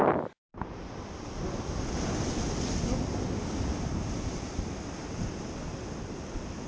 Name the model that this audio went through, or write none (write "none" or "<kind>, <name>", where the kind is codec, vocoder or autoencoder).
none